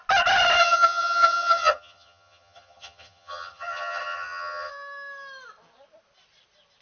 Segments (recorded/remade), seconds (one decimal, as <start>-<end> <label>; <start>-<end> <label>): 0.0-0.6 recorded; 0.6-4.7 remade; 4.7-6.8 recorded